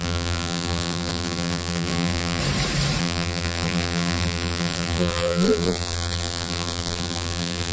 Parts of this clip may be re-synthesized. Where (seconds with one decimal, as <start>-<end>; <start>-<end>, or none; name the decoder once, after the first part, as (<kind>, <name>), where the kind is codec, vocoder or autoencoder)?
0.0-2.4 (vocoder, BigVGAN v2); 3.0-7.7